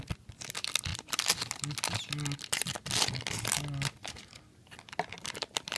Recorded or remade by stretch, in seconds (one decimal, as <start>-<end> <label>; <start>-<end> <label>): 0.0-5.8 recorded